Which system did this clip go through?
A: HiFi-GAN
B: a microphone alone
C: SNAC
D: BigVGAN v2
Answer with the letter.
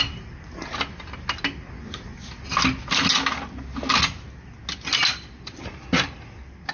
B